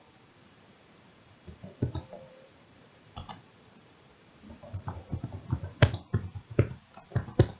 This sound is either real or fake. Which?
fake